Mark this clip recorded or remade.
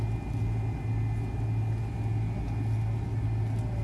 recorded